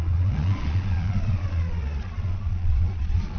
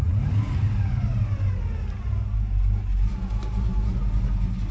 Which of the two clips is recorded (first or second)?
second